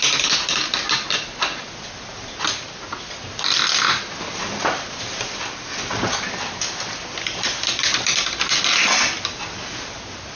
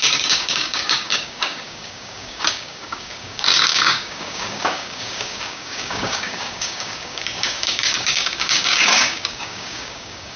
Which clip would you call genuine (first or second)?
first